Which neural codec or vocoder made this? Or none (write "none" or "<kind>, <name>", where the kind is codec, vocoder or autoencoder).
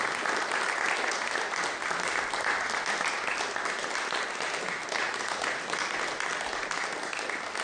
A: none